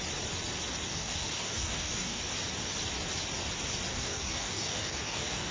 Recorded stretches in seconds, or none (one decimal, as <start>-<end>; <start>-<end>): 0.0-0.9; 2.2-3.9